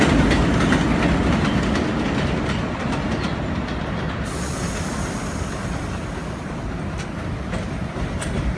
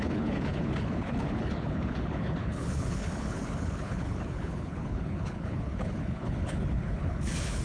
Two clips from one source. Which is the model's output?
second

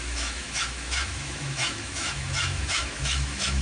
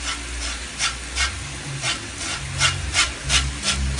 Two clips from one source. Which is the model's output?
first